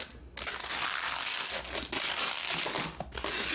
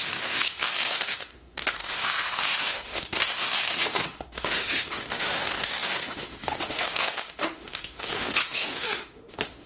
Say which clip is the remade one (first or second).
second